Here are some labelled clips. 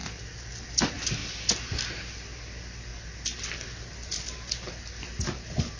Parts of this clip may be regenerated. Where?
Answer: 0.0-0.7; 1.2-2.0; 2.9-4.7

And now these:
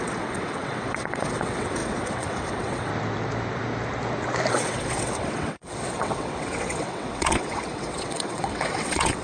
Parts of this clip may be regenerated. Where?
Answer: 0.0-2.9; 4.5-9.2

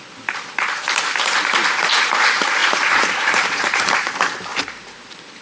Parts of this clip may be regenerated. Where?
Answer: 2.6-4.1; 4.5-5.4